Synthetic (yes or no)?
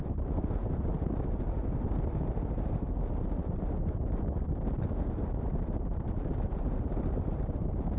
no